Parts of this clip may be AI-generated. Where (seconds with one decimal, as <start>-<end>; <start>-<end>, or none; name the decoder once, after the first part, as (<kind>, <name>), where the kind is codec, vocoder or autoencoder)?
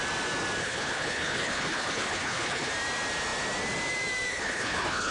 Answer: 0.6-2.7 (codec, HILCodec); 4.3-5.1